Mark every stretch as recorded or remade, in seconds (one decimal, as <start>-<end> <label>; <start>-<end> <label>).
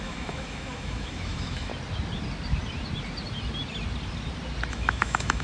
0.0-1.7 remade; 1.7-4.7 recorded; 4.7-5.4 remade